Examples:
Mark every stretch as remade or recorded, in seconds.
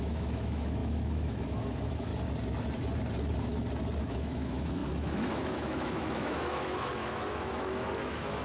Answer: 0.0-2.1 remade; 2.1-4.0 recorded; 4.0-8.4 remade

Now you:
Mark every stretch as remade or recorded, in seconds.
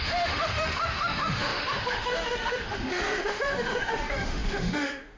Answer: 0.0-5.2 remade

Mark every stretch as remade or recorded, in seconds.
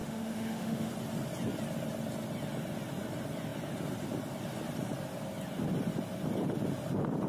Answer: 0.0-0.9 remade; 0.9-7.3 recorded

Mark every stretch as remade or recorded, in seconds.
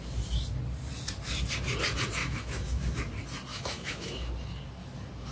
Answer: 0.0-2.2 recorded; 2.2-3.0 remade; 3.0-3.5 recorded; 3.5-4.3 remade; 4.3-5.3 recorded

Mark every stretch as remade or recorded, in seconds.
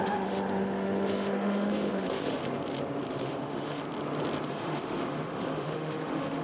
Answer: 0.0-2.4 remade; 2.4-3.1 recorded; 3.1-3.8 remade; 3.8-4.5 recorded; 4.5-6.4 remade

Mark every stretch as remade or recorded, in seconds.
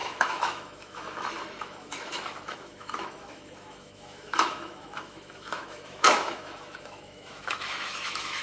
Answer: 0.0-8.4 remade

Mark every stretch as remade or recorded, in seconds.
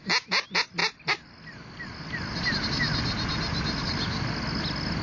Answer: 0.0-5.0 recorded